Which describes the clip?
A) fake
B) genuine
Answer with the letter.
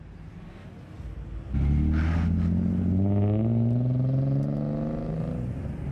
B